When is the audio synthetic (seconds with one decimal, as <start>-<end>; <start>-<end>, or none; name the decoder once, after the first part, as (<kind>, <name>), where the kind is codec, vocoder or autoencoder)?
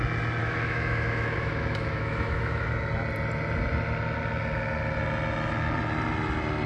0.4-2.7 (autoencoder, DAC-VAE)